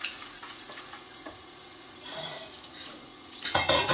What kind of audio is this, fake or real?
fake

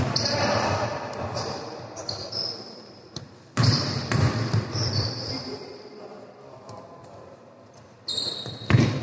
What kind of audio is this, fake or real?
fake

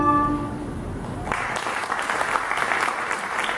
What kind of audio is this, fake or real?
real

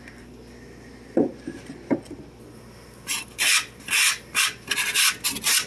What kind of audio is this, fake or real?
real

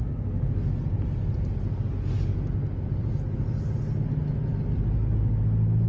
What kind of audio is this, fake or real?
real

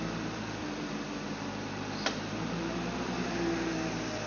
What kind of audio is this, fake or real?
fake